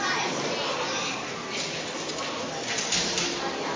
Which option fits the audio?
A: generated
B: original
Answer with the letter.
B